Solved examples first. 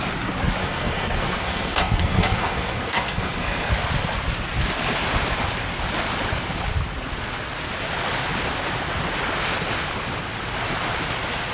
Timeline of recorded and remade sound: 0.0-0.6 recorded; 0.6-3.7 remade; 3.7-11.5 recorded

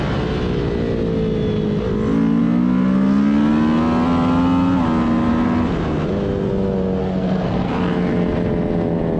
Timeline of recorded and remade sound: 0.0-7.0 recorded; 7.0-7.7 remade; 7.7-9.2 recorded

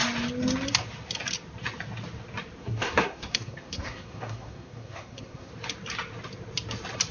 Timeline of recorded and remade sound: 0.0-2.6 recorded; 2.6-5.5 remade; 5.5-7.1 recorded

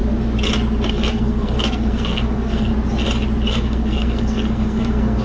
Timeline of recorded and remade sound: 0.0-0.9 recorded; 0.9-2.7 remade; 2.7-3.5 recorded; 3.5-5.2 remade

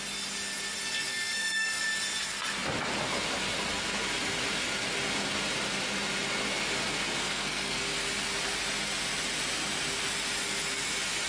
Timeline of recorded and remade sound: 0.0-1.1 recorded; 1.1-1.8 remade; 1.8-7.2 recorded; 7.2-7.8 remade; 7.8-11.3 recorded